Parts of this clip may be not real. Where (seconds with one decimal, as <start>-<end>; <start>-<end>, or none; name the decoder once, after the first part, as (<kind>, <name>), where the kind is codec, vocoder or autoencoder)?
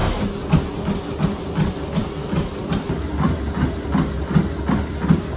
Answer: none